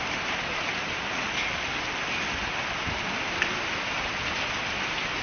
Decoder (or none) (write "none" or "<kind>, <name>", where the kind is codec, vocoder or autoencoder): none